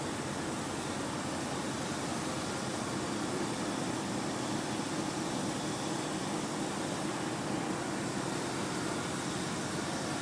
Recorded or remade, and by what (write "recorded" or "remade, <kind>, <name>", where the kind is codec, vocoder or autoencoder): recorded